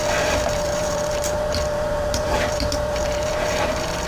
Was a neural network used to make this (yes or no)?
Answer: yes